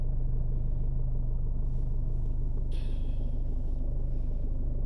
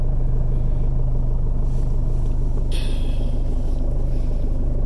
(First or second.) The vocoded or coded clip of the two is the first